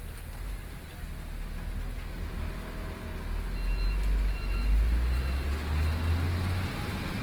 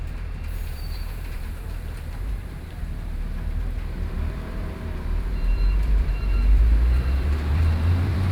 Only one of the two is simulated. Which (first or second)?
second